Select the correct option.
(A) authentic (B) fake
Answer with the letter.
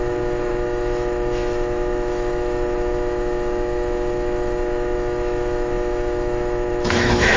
B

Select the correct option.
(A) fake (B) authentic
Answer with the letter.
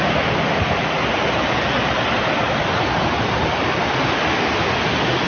B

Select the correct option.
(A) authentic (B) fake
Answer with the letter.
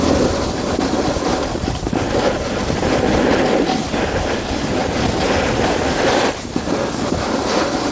A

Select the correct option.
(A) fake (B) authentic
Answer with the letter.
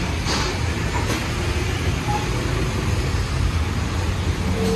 B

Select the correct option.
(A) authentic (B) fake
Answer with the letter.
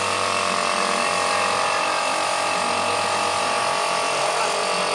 A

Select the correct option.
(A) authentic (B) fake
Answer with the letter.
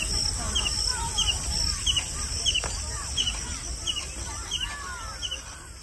A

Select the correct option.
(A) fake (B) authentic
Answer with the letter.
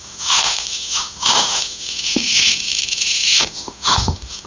A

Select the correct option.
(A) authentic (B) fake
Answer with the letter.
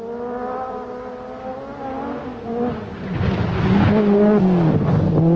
A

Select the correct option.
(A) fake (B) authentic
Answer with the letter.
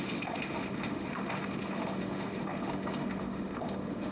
A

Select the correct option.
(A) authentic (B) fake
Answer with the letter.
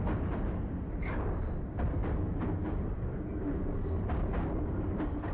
A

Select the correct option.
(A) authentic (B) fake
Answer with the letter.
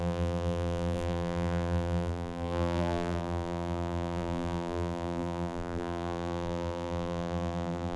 B